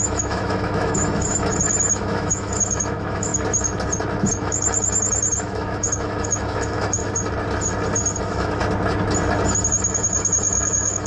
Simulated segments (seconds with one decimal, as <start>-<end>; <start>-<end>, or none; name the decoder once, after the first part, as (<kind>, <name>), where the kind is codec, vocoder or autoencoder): 0.0-3.3 (autoencoder, DAC-VAE); 4.3-7.0; 8.2-8.6; 9.7-11.1